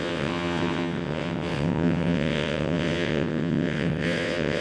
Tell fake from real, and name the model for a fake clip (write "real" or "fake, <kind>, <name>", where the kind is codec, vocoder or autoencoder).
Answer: fake, vocoder, WaveNeXt